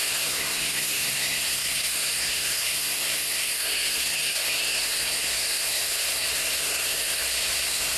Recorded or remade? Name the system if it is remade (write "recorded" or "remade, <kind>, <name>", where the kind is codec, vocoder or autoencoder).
remade, codec, SNAC